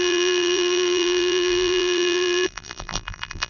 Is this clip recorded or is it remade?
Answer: remade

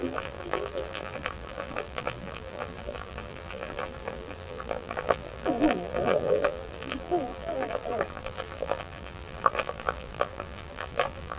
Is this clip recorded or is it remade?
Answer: remade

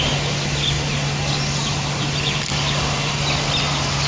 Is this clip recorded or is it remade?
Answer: recorded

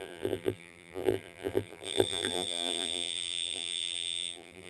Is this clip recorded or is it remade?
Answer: remade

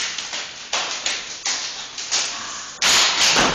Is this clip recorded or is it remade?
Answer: remade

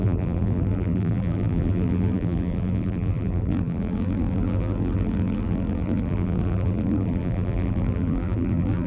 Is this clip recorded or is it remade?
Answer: remade